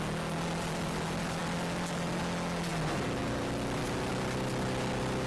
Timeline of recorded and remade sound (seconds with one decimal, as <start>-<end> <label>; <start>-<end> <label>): 0.0-5.3 recorded